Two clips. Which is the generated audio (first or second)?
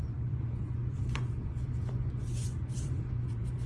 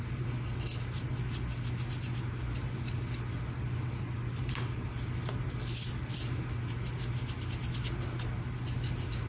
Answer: first